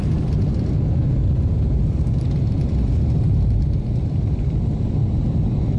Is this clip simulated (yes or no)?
no